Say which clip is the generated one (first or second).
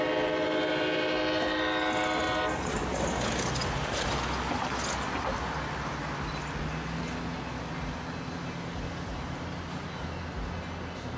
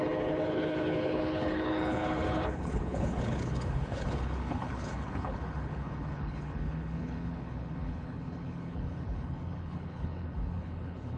second